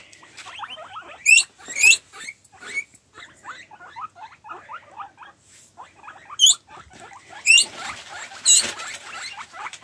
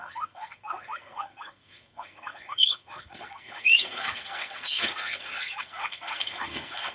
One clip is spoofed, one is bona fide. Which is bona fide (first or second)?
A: first